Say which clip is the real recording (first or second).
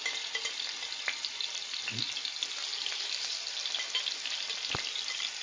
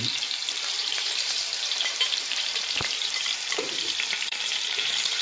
first